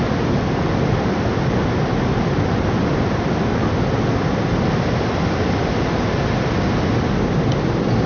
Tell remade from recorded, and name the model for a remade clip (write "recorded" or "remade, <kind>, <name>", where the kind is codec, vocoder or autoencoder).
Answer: recorded